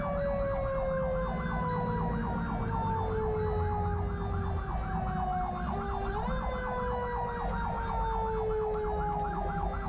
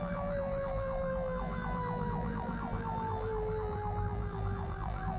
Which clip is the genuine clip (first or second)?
first